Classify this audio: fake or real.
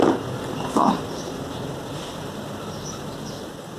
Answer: real